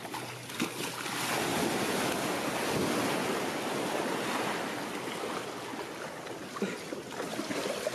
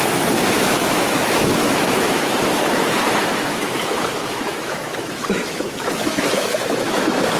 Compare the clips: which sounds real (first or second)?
first